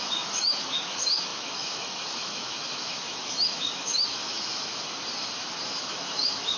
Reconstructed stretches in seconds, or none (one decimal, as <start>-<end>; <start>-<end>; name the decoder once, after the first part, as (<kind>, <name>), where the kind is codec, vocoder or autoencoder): 0.0-4.7 (autoencoder, DAC-VAE); 5.9-6.6